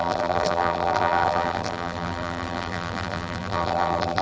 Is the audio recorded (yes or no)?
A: no